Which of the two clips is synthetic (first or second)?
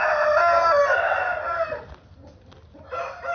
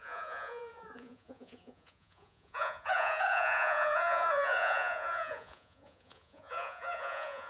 second